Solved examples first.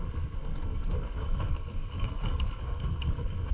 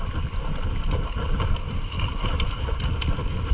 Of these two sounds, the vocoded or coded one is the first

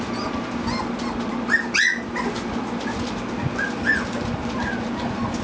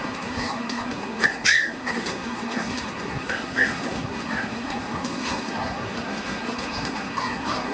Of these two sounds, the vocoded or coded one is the second